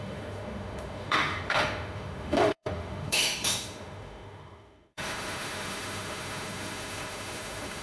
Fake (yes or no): yes